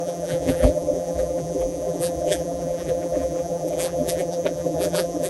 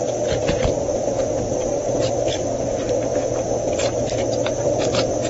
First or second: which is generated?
first